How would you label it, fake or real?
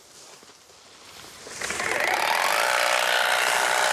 real